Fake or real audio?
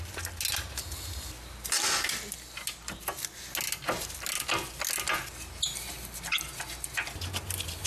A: real